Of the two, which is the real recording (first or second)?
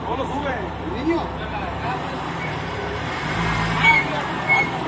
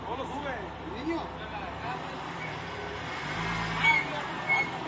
second